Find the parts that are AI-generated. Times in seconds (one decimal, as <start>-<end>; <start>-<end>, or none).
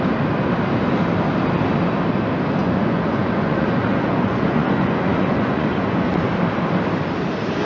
2.6-6.3